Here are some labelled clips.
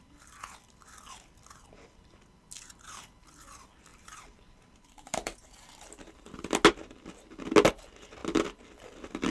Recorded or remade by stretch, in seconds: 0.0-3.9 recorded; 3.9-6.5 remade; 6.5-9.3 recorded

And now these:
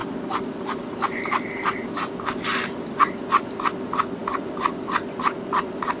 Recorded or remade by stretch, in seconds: 0.0-6.0 recorded

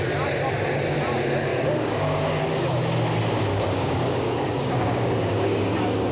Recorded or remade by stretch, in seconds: 0.0-1.5 recorded; 1.5-2.4 remade; 2.4-3.5 recorded; 3.5-6.1 remade

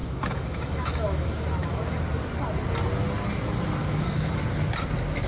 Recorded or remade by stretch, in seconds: 0.0-2.0 remade; 2.0-3.8 recorded; 3.8-4.4 remade; 4.4-5.3 recorded

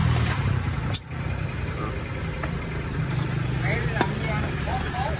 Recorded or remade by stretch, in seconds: 0.0-5.2 remade

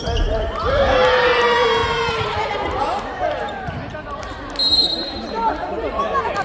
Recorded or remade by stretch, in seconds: 0.0-1.8 recorded; 1.8-4.2 remade; 4.2-4.8 recorded; 4.8-5.7 remade; 5.7-6.4 recorded